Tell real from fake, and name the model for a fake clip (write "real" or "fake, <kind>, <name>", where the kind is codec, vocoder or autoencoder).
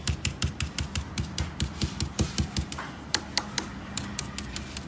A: real